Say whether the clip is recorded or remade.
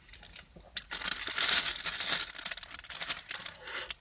recorded